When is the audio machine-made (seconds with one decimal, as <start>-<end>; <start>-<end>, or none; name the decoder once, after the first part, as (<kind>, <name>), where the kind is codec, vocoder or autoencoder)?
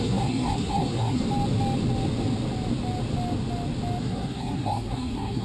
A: 0.0-1.2 (codec, SNAC); 4.0-5.4